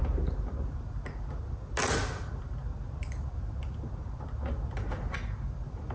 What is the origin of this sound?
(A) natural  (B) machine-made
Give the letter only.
A